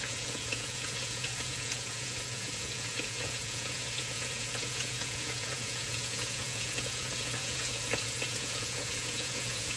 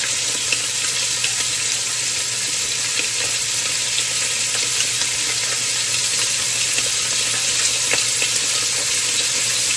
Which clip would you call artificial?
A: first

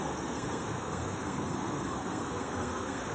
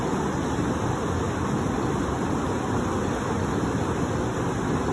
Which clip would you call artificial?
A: first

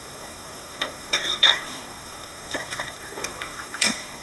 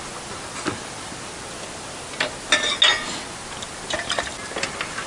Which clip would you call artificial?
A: first